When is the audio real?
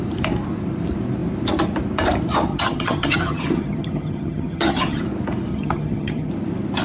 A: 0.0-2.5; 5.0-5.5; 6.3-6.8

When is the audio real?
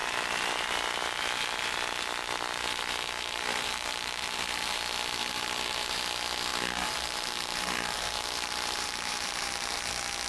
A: 4.8-5.2; 6.0-6.5; 9.9-10.3